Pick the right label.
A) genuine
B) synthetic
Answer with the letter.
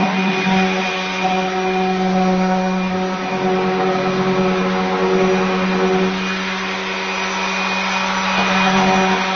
A